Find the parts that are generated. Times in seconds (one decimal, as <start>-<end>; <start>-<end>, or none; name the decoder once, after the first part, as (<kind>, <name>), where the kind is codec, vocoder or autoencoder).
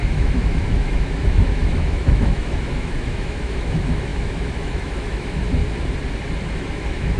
0.0-5.6 (autoencoder, DAC-VAE); 6.5-7.2